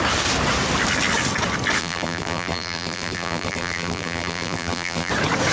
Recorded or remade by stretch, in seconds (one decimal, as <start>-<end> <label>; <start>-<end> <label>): 0.0-1.8 recorded; 1.8-5.1 remade; 5.1-5.5 recorded